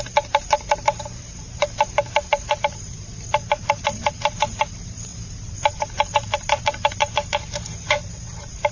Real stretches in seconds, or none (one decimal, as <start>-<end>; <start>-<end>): none

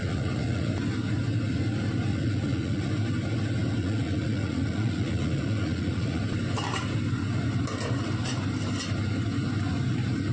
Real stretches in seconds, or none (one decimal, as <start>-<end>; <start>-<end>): 0.7-2.1; 2.9-3.8; 6.2-10.3

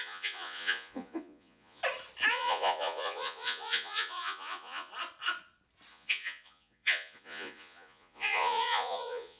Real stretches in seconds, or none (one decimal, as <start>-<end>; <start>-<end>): 1.8-2.3; 4.9-5.9

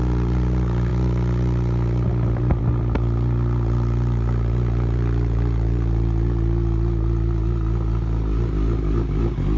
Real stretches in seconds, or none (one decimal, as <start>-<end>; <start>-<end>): 0.0-9.6

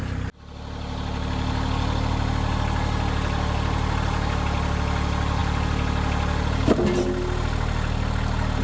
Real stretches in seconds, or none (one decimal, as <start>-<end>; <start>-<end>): 0.0-8.6

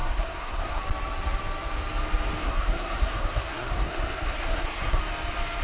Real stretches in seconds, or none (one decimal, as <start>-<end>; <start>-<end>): 0.8-2.4; 5.0-5.6